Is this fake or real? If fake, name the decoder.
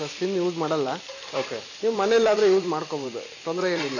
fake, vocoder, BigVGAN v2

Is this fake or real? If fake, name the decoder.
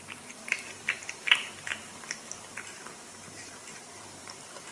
fake, vocoder, BigVGAN v2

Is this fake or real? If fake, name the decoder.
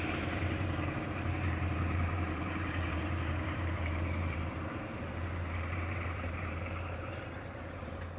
fake, vocoder, BigVGAN v2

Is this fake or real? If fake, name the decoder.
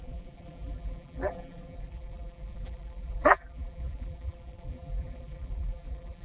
fake, vocoder, BigVGAN v2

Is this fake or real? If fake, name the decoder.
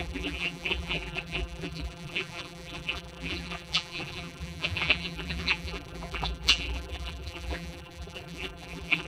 fake, vocoder, BigVGAN v2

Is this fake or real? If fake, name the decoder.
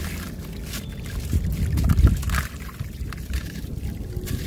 real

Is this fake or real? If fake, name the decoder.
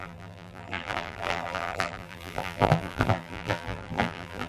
fake, vocoder, BigVGAN v2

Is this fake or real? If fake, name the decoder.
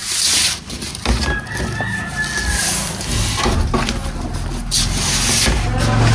real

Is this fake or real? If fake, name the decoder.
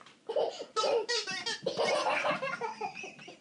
real